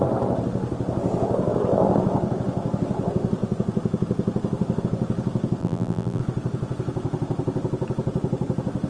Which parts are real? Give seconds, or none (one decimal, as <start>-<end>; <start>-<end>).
0.0-5.6; 6.2-8.9